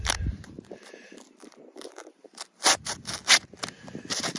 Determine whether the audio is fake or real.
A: fake